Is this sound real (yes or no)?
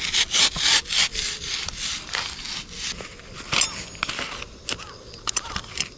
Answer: yes